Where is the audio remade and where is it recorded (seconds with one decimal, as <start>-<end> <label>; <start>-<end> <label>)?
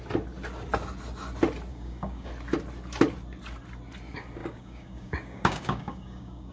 0.0-1.7 recorded; 1.7-2.3 remade; 2.3-4.4 recorded; 4.4-6.5 remade